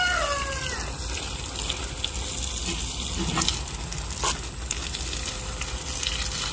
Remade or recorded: recorded